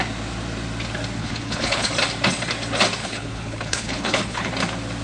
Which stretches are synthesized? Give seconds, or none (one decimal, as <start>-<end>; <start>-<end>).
1.2-1.9; 3.0-4.5